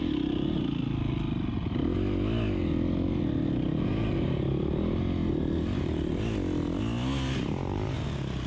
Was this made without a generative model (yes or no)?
yes